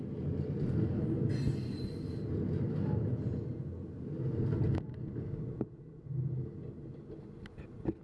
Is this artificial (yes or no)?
no